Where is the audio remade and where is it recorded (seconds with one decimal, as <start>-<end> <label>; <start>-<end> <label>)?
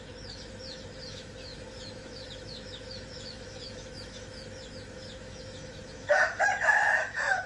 0.0-7.5 remade